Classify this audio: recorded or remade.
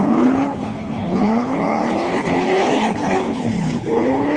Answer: remade